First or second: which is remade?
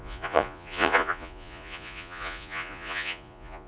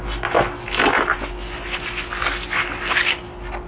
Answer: first